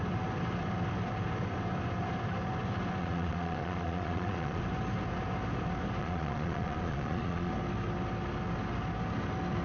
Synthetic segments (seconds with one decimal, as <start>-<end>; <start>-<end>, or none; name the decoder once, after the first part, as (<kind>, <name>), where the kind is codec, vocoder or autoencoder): 3.0-4.6 (vocoder, Vocos); 6.0-7.5